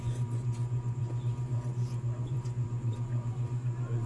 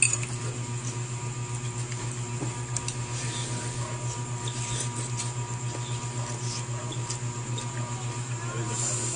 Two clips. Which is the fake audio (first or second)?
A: first